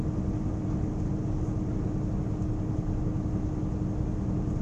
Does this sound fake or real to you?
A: real